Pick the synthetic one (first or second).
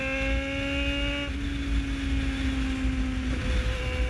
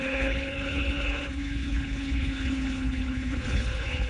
second